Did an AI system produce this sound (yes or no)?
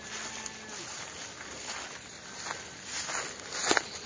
no